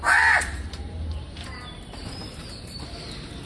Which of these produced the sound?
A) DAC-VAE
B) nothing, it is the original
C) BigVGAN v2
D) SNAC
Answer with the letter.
C